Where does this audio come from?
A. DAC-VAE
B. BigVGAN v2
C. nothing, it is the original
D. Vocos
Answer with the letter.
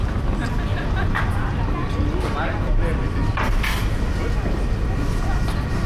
C